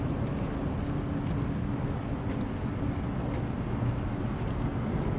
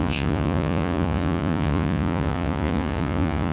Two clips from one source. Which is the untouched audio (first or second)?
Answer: first